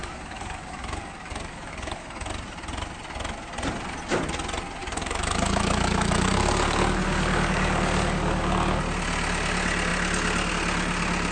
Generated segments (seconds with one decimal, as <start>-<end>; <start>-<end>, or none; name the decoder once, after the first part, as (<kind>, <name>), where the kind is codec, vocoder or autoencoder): 0.0-2.3 (codec, DAC); 4.8-8.8